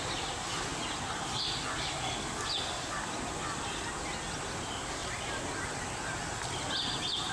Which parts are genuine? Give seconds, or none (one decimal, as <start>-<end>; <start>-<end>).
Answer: 0.0-7.3